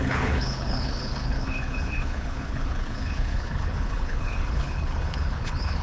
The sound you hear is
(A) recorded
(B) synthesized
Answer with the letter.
B